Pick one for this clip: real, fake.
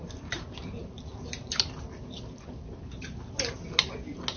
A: real